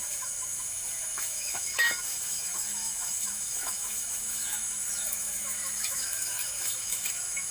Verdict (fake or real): fake